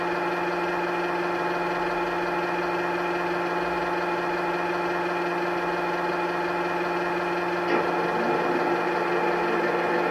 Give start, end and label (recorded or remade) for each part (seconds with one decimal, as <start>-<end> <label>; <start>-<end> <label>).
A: 0.0-10.1 recorded